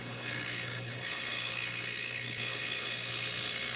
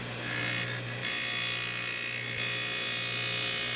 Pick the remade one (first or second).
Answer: first